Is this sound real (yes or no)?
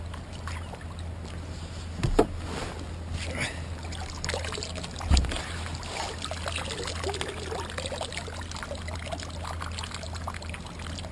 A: yes